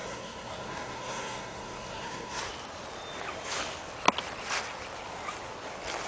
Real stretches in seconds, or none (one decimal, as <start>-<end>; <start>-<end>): 2.4-6.1